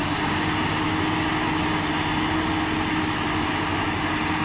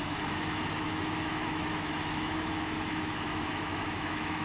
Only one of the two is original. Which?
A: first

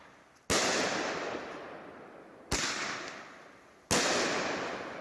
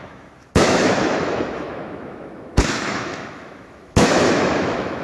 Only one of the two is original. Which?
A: first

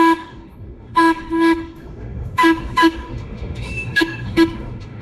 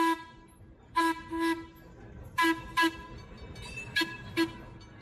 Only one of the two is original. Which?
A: second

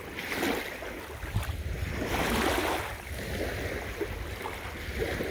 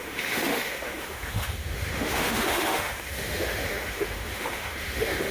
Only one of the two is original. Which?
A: first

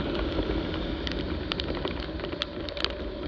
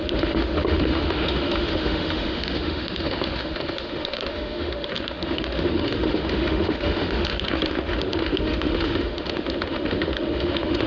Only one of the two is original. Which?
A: first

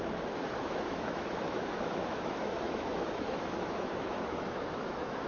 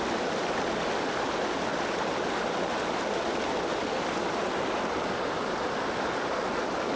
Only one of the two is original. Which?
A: second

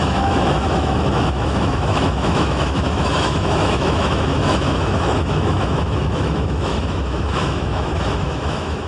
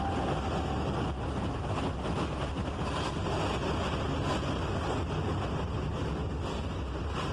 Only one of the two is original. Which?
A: second